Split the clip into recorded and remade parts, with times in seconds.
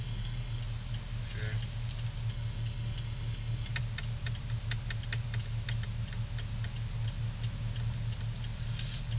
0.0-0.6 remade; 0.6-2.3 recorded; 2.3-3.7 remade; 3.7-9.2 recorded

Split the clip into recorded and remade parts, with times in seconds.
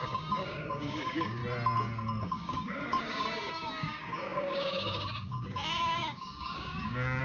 0.0-1.4 remade; 1.4-2.2 recorded; 2.2-7.2 remade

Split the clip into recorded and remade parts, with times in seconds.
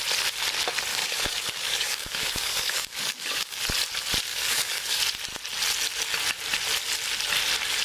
0.0-0.9 recorded; 0.9-3.6 remade; 3.6-4.3 recorded; 4.3-5.0 remade; 5.0-7.8 recorded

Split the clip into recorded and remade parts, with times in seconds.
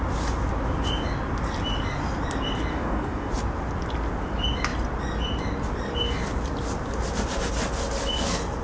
0.0-2.7 recorded; 2.7-3.3 remade; 3.3-8.6 recorded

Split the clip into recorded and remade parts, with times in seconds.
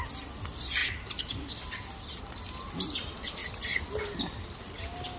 0.0-5.2 recorded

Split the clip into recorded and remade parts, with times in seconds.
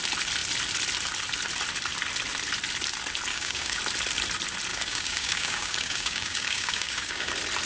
0.0-3.3 recorded; 3.3-3.8 remade; 3.8-4.7 recorded; 4.7-7.3 remade; 7.3-7.7 recorded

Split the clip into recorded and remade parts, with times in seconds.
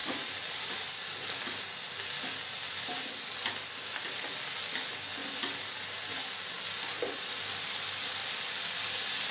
0.0-9.3 recorded